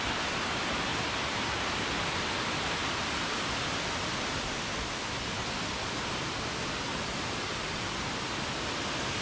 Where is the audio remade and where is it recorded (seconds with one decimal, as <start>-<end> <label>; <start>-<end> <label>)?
0.0-9.2 recorded